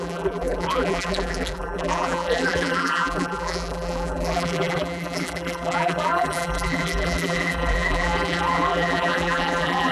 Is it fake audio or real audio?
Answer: fake